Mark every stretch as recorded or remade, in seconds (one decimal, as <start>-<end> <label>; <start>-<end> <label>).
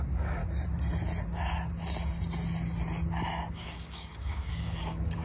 0.0-0.4 remade; 0.4-3.5 recorded; 3.5-5.2 remade